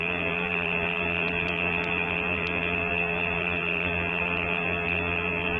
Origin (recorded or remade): remade